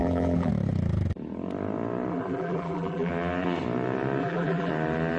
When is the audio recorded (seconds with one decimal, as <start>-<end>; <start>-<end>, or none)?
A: 0.5-2.1; 3.1-4.2; 4.7-5.2